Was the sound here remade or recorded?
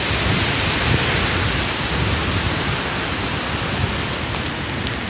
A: recorded